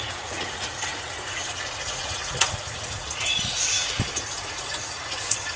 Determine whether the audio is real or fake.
fake